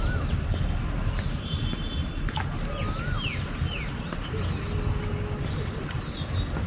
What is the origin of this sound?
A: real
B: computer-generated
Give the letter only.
A